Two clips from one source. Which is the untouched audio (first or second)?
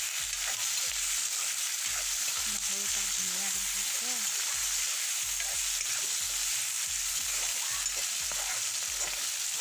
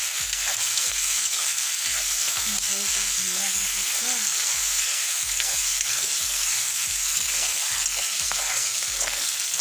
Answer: first